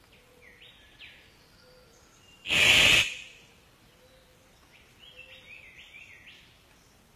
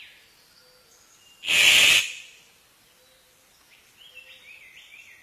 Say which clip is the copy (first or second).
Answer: first